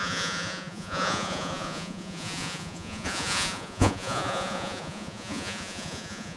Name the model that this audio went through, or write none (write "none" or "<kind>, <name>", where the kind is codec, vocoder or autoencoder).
vocoder, Vocos